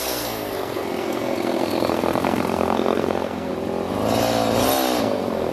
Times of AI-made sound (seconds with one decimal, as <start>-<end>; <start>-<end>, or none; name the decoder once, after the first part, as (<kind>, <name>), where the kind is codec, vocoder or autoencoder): 0.0-3.5 (codec, SNAC); 5.0-5.5